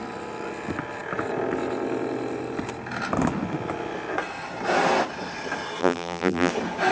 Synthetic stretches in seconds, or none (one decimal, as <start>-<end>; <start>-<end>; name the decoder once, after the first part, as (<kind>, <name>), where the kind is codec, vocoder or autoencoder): 5.8-6.5 (vocoder, BigVGAN v2)